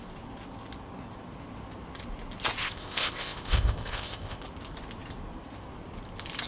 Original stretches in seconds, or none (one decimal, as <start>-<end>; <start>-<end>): 0.0-2.6; 4.4-6.5